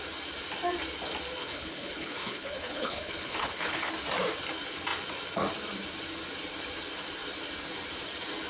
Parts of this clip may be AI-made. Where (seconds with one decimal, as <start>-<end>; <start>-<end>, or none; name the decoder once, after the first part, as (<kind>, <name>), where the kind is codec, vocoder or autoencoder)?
1.4-3.9 (codec, HILCodec)